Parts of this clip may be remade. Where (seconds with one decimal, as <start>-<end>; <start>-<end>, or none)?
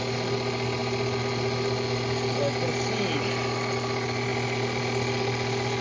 none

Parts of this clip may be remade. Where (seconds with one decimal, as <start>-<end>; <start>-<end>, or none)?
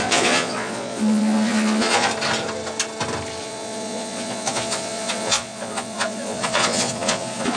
0.0-2.1; 3.4-7.6